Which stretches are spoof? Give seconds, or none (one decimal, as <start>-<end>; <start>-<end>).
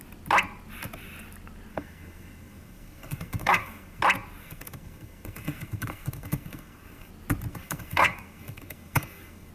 1.7-4.0; 4.4-7.1; 7.5-9.5